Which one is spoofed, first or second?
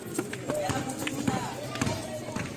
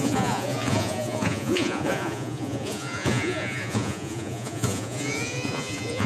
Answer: second